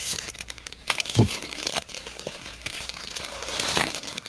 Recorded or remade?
remade